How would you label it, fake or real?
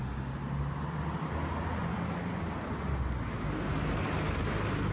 real